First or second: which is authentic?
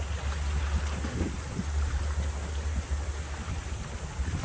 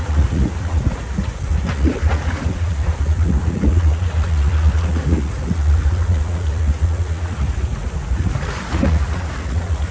first